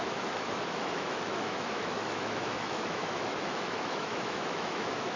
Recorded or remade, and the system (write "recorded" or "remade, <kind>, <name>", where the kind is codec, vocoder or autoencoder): remade, autoencoder, DAC-VAE